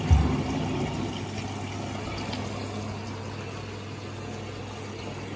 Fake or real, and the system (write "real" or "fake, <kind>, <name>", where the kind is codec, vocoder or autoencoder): real